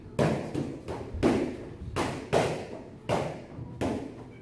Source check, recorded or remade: recorded